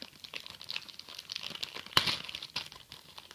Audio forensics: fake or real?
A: real